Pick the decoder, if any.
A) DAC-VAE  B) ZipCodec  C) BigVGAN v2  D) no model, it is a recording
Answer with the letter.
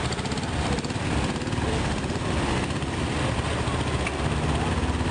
D